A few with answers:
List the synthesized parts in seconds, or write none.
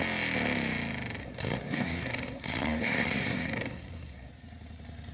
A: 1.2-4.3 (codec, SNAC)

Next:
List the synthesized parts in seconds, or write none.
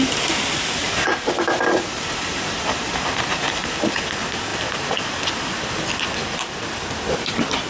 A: 0.8-4.0 (vocoder, BigVGAN v2)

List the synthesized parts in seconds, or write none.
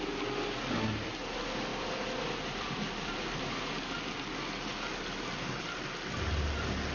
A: 1.7-3.8 (vocoder, BigVGAN v2); 4.7-5.3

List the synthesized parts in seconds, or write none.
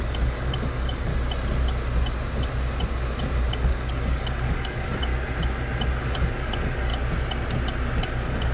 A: 0.0-1.1 (codec, DAC); 3.5-5.1; 6.0-6.9; 8.0-8.5